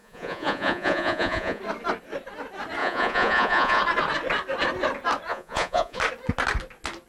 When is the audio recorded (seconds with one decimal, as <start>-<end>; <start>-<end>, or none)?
1.6-2.8; 3.8-5.3; 6.0-7.1